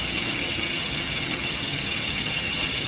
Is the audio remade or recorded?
remade